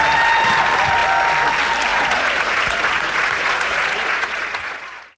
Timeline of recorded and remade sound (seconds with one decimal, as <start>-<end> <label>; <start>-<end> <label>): 0.0-1.9 recorded; 1.9-5.2 remade